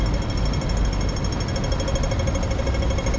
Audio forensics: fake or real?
real